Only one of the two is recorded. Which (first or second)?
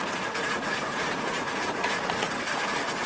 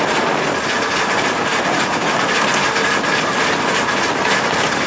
second